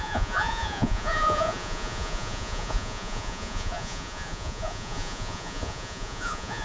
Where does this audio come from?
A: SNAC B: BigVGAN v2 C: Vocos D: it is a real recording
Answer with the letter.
C